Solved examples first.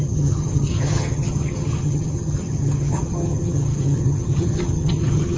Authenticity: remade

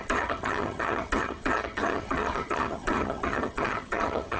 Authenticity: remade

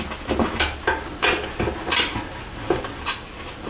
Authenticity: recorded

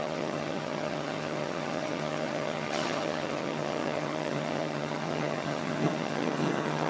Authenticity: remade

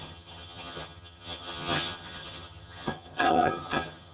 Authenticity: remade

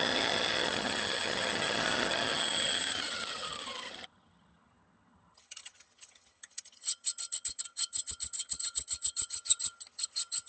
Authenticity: remade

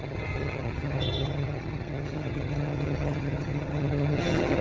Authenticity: remade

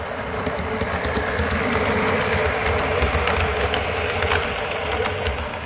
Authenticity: recorded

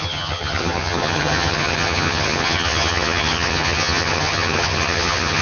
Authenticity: remade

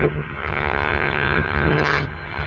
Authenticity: remade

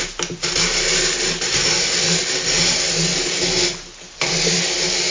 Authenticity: recorded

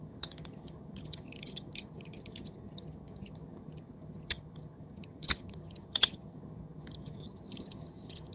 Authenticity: remade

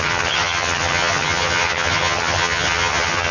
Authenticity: remade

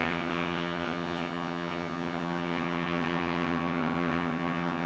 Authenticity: remade